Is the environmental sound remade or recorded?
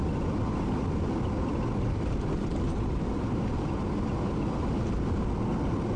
recorded